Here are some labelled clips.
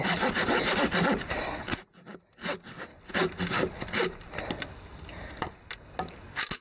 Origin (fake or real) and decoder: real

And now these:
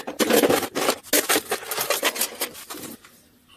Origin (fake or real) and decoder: real